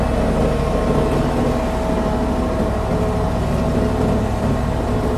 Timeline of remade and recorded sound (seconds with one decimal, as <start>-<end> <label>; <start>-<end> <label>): 0.0-5.2 recorded